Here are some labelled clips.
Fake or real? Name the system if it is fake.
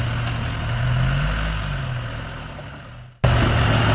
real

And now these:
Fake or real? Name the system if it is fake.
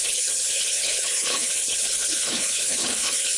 fake, codec, HILCodec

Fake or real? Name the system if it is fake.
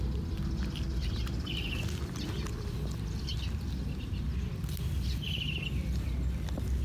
real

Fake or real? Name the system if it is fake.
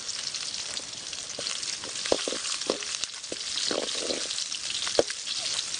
real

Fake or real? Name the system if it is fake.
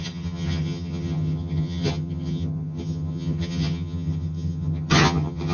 fake, vocoder, HiFi-GAN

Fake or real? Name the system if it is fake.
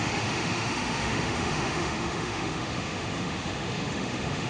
fake, autoencoder, DAC-VAE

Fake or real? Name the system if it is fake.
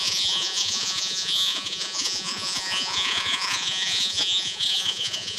fake, vocoder, Vocos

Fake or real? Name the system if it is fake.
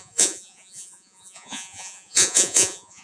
fake, vocoder, Vocos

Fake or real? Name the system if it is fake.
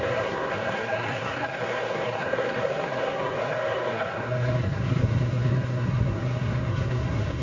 fake, codec, SNAC